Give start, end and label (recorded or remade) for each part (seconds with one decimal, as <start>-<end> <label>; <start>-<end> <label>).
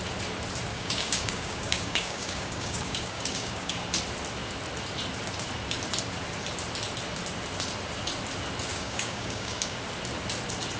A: 0.0-0.7 recorded; 0.7-3.7 remade; 3.7-8.7 recorded; 8.7-9.8 remade; 9.8-10.8 recorded